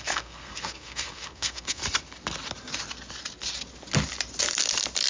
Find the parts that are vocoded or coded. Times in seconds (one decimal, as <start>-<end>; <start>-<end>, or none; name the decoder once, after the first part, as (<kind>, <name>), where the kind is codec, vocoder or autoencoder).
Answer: 0.0-1.8 (codec, SNAC)